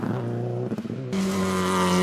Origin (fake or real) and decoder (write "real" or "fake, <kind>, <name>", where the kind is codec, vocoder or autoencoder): real